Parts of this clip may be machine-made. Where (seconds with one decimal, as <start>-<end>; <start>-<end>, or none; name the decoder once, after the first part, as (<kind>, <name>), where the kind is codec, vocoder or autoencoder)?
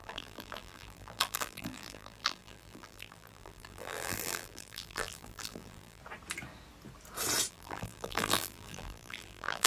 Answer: 0.0-6.0 (vocoder, BigVGAN v2); 7.5-9.7